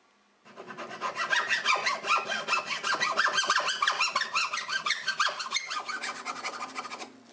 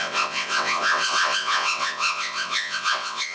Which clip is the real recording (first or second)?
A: first